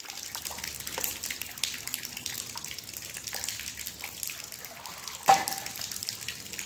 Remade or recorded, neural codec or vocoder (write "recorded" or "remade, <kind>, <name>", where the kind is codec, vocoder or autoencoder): recorded